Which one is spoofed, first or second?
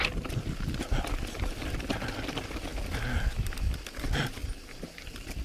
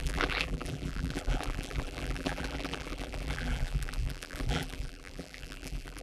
second